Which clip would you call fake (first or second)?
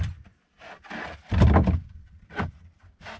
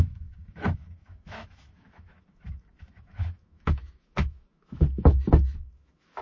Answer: second